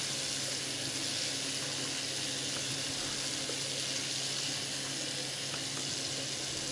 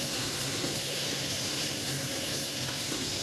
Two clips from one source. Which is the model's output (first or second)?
second